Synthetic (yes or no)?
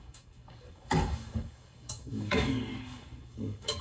yes